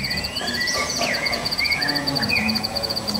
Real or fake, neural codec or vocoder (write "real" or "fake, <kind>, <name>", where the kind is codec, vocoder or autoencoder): fake, vocoder, Vocos